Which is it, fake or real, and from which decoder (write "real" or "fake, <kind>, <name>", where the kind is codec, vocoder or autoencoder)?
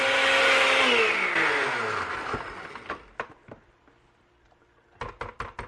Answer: real